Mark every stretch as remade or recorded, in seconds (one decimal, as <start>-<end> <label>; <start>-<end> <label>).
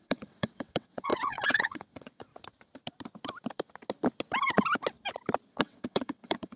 0.0-2.3 remade; 2.3-5.5 recorded; 5.5-6.6 remade